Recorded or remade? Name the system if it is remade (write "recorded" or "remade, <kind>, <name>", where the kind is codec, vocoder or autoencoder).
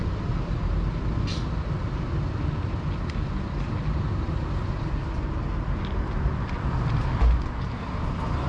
recorded